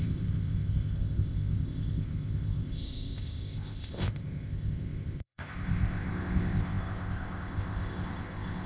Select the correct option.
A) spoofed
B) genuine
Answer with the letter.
A